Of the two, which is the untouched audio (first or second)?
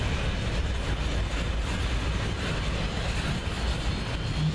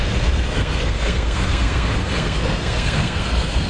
first